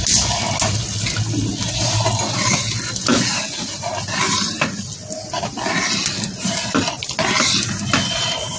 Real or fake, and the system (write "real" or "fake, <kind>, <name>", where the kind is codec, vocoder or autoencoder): real